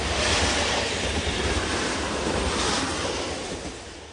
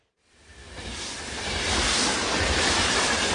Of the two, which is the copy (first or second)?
second